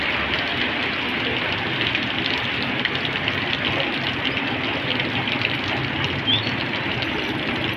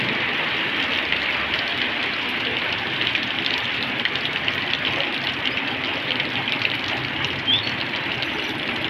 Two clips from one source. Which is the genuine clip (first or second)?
first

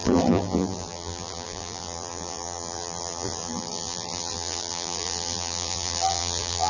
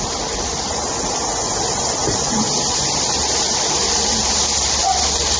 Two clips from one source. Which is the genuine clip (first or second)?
second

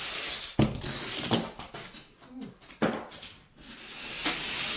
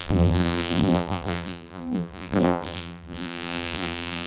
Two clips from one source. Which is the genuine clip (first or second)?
first